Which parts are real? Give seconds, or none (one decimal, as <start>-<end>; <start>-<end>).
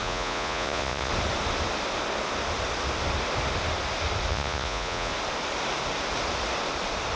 1.1-4.3; 5.1-7.2